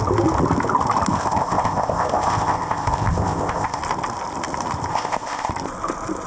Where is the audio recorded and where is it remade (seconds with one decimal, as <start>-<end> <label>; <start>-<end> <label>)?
0.0-1.1 recorded; 1.1-3.8 remade; 3.8-4.9 recorded; 4.9-5.5 remade; 5.5-6.3 recorded